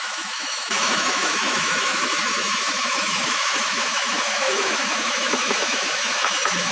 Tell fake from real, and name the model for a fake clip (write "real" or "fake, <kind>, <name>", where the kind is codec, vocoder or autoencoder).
fake, autoencoder, DAC-VAE